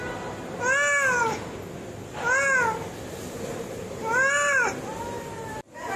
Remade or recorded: recorded